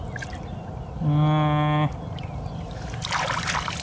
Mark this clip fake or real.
real